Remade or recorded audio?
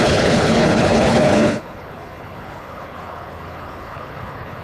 remade